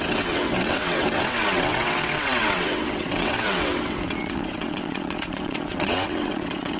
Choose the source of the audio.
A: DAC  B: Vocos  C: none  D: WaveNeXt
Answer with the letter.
D